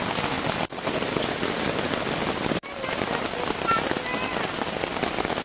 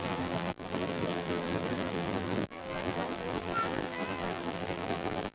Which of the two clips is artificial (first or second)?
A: second